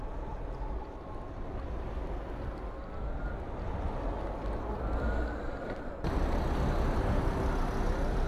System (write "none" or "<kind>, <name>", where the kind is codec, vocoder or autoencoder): none